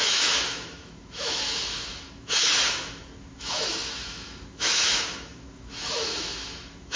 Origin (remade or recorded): remade